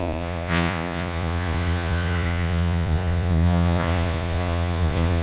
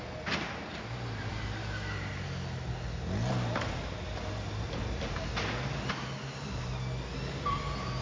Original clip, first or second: second